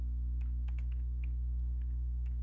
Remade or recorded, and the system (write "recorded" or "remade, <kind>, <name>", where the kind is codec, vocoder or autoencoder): remade, codec, SNAC